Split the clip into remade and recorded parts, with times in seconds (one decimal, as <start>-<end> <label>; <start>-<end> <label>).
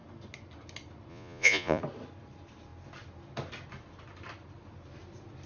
0.0-1.1 recorded; 1.1-1.8 remade; 1.8-5.5 recorded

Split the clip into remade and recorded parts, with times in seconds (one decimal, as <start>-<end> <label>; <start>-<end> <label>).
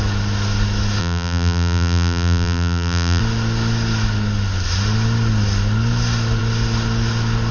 0.0-1.0 recorded; 1.0-3.2 remade; 3.2-7.5 recorded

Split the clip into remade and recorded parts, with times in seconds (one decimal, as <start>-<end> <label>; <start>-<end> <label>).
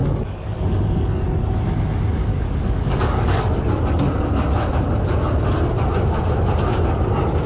0.0-1.2 remade; 1.2-2.2 recorded; 2.2-3.4 remade; 3.4-7.5 recorded